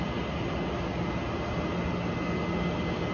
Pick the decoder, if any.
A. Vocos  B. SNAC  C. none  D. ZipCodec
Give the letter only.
C